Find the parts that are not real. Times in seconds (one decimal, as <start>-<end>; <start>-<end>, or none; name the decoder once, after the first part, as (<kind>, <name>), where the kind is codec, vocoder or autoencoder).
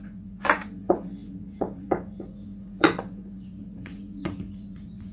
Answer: 0.0-5.1 (vocoder, Vocos)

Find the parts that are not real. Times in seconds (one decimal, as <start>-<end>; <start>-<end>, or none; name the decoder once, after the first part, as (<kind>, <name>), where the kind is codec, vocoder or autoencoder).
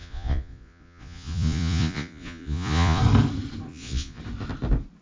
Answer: 0.0-3.0 (vocoder, Vocos); 3.7-4.2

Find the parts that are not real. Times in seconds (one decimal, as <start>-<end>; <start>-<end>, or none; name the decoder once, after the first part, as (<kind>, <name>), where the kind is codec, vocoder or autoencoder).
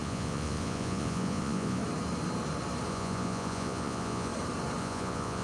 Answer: 0.0-1.8 (vocoder, Vocos); 2.9-4.3; 4.8-5.4